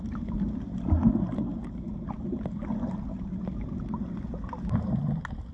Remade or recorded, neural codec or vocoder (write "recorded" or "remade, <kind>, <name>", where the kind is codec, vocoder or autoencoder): recorded